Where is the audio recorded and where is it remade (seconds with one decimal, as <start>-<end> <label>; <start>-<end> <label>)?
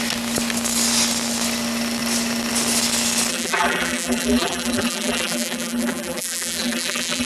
0.0-3.3 recorded; 3.3-7.3 remade